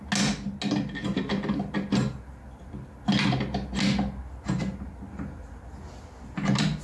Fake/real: real